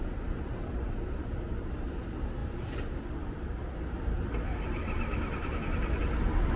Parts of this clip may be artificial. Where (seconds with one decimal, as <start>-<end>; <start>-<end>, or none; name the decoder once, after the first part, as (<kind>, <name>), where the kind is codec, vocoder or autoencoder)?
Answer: 0.0-2.4 (vocoder, BigVGAN v2); 3.0-6.6